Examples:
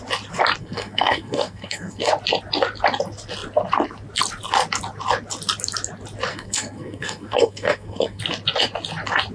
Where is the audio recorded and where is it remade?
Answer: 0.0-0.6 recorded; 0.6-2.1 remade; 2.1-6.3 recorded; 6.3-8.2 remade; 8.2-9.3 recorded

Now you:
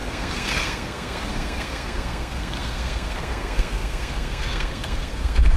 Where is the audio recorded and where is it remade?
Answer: 0.0-5.6 remade

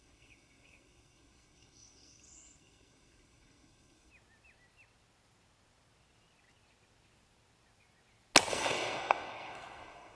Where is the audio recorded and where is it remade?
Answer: 0.0-4.1 remade; 4.1-8.5 recorded; 8.5-10.2 remade

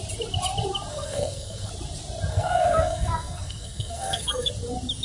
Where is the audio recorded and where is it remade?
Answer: 0.0-0.9 recorded; 0.9-1.7 remade; 1.7-2.3 recorded; 2.3-4.5 remade; 4.5-5.0 recorded